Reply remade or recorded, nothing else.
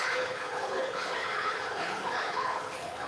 remade